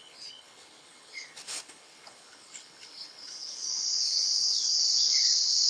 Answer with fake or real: fake